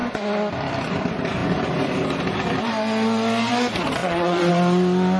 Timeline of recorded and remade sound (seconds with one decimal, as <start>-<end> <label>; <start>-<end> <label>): 0.0-4.0 recorded; 4.0-4.5 remade; 4.5-5.2 recorded